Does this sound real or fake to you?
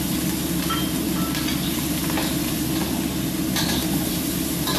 real